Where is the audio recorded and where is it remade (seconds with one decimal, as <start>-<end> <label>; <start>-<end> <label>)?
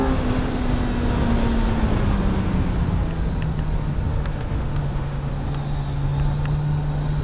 0.0-4.1 recorded; 4.1-5.3 remade; 5.3-7.2 recorded